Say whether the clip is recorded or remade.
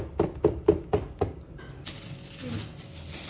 recorded